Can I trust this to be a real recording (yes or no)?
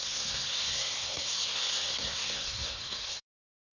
no